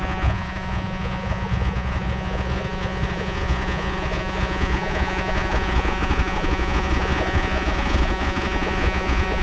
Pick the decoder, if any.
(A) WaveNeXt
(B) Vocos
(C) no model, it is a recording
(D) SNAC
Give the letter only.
B